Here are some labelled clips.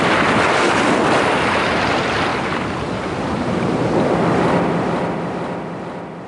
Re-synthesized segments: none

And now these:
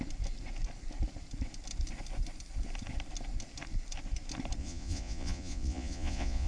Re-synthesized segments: 4.6-6.5 (vocoder, Vocos)

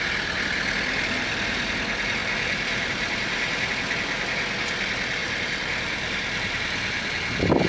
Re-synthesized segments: 2.2-3.7 (vocoder, BigVGAN v2); 5.2-7.0